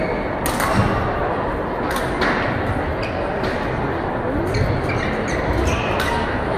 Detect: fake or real real